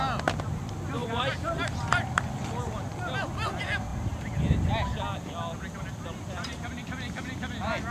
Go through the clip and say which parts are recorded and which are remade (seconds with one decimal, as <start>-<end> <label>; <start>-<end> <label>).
0.0-1.0 recorded; 1.0-2.3 remade; 2.3-7.9 recorded